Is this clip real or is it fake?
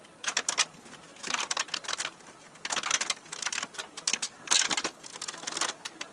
real